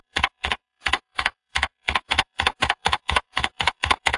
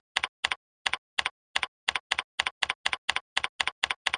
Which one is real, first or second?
second